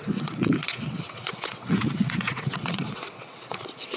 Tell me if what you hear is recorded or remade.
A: remade